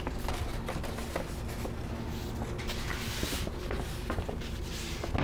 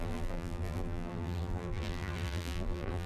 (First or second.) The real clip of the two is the first